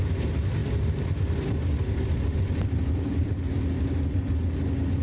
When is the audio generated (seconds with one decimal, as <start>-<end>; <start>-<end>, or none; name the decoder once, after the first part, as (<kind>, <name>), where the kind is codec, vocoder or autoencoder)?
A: 0.6-3.6 (vocoder, BigVGAN v2)